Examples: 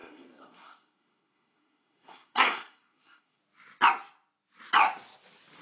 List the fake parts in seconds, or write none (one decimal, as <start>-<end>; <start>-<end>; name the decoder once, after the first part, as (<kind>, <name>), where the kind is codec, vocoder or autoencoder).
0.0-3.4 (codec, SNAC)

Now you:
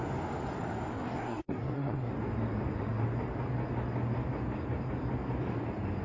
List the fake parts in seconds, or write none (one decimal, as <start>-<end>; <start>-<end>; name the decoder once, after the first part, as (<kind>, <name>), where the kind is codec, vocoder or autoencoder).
0.9-2.1 (codec, SNAC)

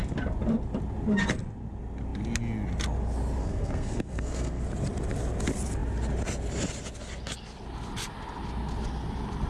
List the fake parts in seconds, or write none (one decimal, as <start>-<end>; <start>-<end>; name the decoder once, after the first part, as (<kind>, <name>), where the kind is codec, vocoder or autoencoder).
3.4-4.6 (codec, SNAC)

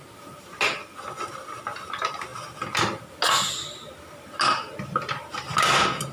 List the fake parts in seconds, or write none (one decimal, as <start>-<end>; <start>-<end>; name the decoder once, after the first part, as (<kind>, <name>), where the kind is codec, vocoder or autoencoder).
none

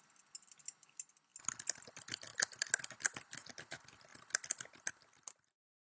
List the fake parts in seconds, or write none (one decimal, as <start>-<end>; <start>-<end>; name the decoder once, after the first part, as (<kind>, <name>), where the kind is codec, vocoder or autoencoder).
none

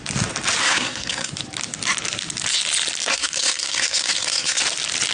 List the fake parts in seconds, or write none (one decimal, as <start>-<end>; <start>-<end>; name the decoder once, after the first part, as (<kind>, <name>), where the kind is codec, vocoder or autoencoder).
0.6-1.3 (codec, SNAC); 3.1-4.6